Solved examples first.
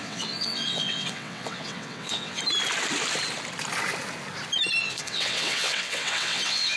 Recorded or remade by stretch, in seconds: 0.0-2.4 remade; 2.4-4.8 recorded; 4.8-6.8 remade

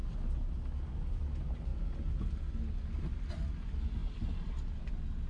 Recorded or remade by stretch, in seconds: 0.0-4.0 recorded; 4.0-4.8 remade; 4.8-5.3 recorded

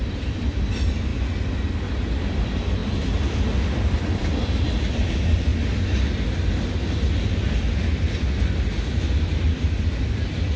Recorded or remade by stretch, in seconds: 0.0-1.1 remade; 1.1-2.2 recorded; 2.2-5.5 remade; 5.5-10.0 recorded; 10.0-10.6 remade